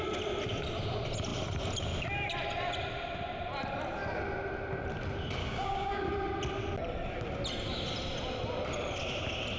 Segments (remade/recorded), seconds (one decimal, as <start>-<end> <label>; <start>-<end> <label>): 0.0-5.4 recorded; 5.4-6.1 remade; 6.1-9.6 recorded